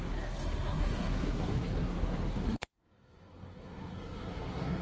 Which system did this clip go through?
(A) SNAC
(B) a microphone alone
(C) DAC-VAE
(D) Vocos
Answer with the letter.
A